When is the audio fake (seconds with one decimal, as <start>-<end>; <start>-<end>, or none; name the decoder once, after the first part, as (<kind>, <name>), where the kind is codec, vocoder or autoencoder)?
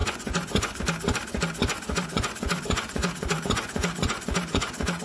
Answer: 0.0-0.8 (vocoder, Vocos); 1.7-5.0